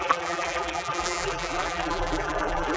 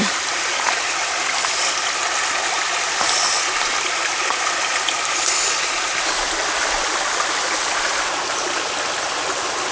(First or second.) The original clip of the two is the second